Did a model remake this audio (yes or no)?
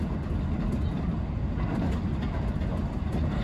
no